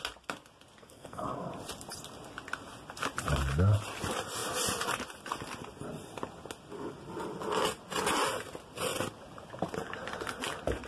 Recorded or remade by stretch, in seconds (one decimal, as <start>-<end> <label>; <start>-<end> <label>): 0.0-0.8 recorded; 0.8-1.5 remade; 1.5-10.9 recorded

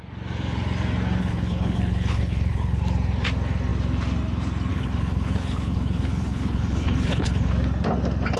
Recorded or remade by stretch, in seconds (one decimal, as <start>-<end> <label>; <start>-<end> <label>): 0.0-1.2 recorded; 1.2-2.8 remade; 2.8-4.7 recorded; 4.7-7.5 remade; 7.5-8.4 recorded

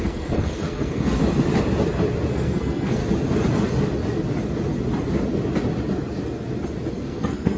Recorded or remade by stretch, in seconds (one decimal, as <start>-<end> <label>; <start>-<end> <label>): 0.0-1.2 remade; 1.2-2.3 recorded; 2.3-3.0 remade; 3.0-6.9 recorded; 6.9-7.6 remade

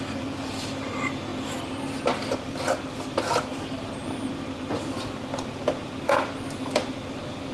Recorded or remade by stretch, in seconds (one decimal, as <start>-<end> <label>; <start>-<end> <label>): 0.0-7.5 recorded

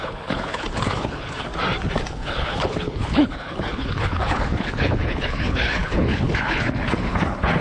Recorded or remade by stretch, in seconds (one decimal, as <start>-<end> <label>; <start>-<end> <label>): 0.0-1.5 remade; 1.5-2.1 recorded; 2.1-7.6 remade

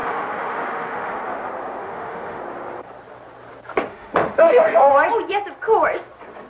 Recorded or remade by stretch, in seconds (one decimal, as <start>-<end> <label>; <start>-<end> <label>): 0.0-1.1 remade; 1.1-1.8 recorded; 1.8-2.4 remade; 2.4-3.9 recorded; 3.9-4.9 remade; 4.9-6.5 recorded

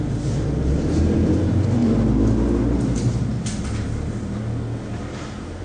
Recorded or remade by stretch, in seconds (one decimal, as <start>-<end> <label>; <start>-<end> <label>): 0.0-5.6 recorded

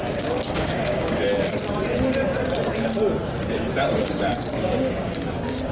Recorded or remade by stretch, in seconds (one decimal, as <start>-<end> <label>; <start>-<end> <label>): 0.0-1.2 remade; 1.2-4.0 recorded; 4.0-5.7 remade